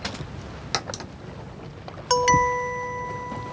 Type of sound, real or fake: real